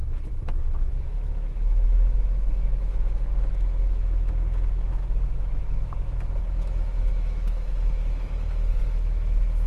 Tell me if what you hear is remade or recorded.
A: remade